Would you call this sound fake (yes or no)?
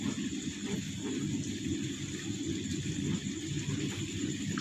no